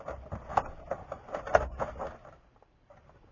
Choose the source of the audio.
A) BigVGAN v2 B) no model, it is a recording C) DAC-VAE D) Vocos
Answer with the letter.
B